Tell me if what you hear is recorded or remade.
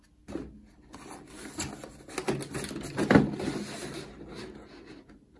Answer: recorded